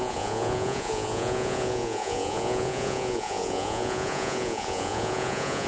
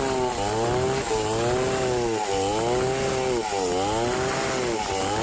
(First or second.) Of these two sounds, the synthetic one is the first